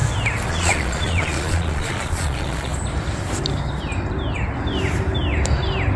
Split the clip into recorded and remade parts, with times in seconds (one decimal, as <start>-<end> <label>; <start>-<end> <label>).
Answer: 0.0-0.5 recorded; 0.5-2.7 remade; 2.7-6.0 recorded

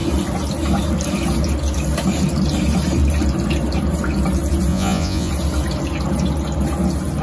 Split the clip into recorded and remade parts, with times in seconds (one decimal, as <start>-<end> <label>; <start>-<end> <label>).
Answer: 0.0-4.7 recorded; 4.7-5.3 remade; 5.3-7.2 recorded

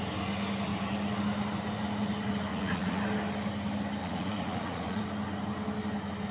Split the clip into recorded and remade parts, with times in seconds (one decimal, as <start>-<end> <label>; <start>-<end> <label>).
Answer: 0.0-2.5 recorded; 2.5-3.0 remade; 3.0-4.0 recorded; 4.0-5.0 remade; 5.0-6.3 recorded

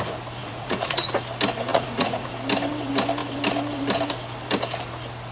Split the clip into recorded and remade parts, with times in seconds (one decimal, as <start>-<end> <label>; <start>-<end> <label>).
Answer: 0.0-0.4 recorded; 0.4-1.2 remade; 1.2-1.7 recorded; 1.7-2.3 remade; 2.3-5.3 recorded

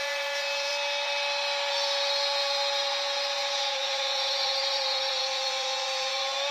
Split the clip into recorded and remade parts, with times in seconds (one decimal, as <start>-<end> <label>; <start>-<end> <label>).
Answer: 0.0-0.7 remade; 0.7-1.7 recorded; 1.7-6.5 remade